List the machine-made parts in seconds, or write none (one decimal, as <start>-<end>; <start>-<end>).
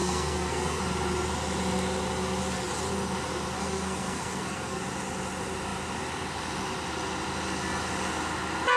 0.0-0.8; 3.6-4.8